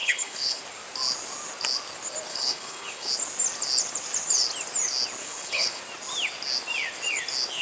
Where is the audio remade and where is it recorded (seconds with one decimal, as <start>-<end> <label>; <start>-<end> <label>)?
0.0-0.6 remade; 0.6-2.3 recorded; 2.3-3.1 remade; 3.1-5.2 recorded; 5.2-5.8 remade; 5.8-7.6 recorded